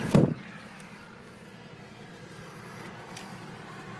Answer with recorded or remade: recorded